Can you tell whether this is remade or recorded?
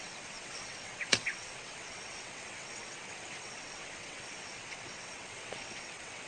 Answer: remade